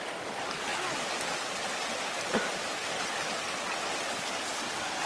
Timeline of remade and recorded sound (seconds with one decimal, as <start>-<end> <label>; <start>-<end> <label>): 0.0-5.1 recorded